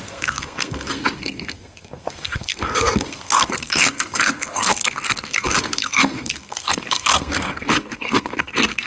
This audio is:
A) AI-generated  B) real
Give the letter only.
A